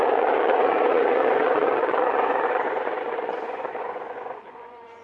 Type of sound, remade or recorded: remade